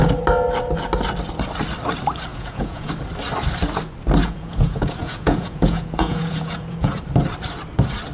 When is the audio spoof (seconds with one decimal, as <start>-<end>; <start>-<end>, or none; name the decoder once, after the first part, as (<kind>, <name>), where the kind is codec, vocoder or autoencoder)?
2.3-2.9 (vocoder, Vocos); 4.2-7.0